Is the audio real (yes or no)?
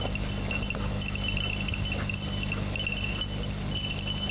yes